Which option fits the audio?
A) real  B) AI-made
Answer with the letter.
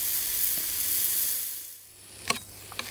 A